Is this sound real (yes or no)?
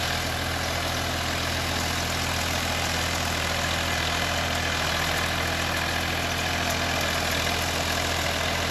yes